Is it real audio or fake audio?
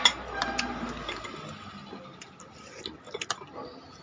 real